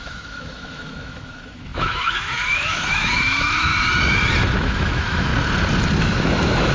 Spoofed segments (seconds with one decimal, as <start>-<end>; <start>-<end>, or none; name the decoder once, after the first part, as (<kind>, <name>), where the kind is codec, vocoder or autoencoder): 0.0-3.7 (autoencoder, DAC-VAE); 4.6-5.3; 6.0-6.7